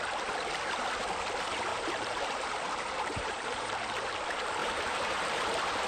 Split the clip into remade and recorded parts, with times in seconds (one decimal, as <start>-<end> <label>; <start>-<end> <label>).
0.0-1.7 recorded; 1.7-4.1 remade; 4.1-4.6 recorded; 4.6-5.5 remade; 5.5-5.9 recorded

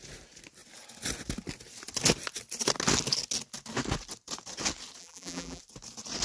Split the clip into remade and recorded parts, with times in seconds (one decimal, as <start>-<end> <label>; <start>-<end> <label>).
0.0-5.0 recorded; 5.0-5.6 remade; 5.6-6.2 recorded

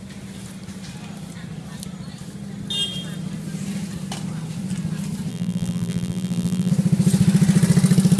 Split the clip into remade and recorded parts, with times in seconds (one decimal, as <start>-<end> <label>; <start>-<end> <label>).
0.0-5.3 recorded; 5.3-6.7 remade; 6.7-8.2 recorded